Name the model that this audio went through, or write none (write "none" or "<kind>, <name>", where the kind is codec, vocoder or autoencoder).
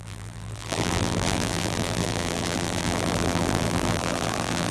vocoder, BigVGAN v2